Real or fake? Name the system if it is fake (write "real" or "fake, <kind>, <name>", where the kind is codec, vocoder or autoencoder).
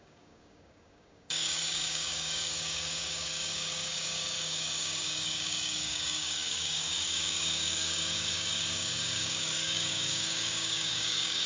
fake, codec, DAC